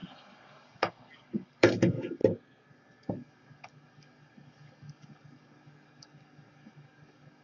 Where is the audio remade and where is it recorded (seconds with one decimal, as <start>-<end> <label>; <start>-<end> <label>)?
0.0-2.2 remade; 2.2-2.7 recorded; 2.7-7.4 remade